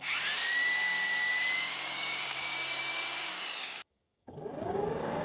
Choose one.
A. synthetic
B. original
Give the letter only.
A